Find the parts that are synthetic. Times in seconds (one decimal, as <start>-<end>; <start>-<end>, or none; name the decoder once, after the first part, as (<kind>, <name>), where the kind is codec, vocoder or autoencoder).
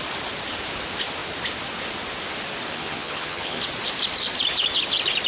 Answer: 2.7-3.6 (vocoder, HiFi-GAN)